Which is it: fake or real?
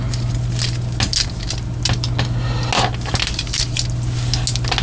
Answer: real